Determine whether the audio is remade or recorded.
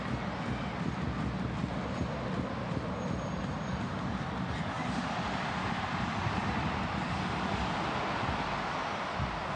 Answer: recorded